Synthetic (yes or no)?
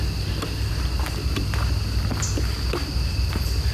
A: no